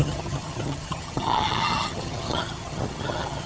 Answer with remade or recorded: remade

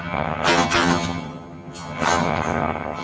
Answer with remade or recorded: remade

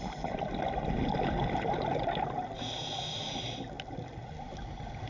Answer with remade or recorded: recorded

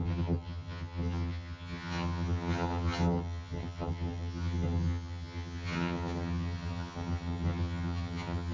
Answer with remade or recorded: remade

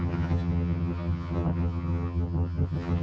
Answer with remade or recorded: remade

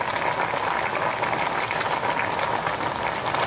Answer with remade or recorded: recorded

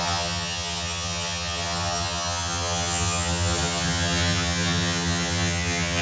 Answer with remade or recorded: remade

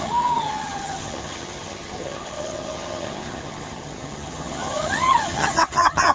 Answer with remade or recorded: remade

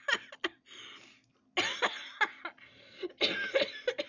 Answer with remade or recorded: recorded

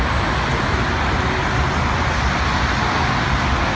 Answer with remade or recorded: recorded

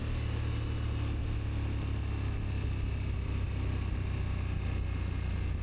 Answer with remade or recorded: recorded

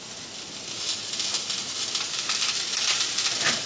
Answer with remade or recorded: recorded